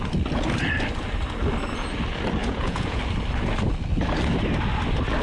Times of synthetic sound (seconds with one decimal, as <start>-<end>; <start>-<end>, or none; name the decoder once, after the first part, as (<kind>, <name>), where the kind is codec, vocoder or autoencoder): 2.4-3.0 (vocoder, Vocos)